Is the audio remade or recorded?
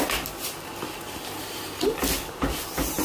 recorded